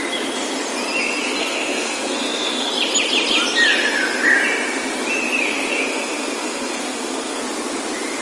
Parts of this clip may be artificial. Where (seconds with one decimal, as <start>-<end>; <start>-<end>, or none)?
1.4-2.7; 5.9-7.4